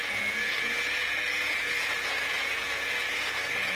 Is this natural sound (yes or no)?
no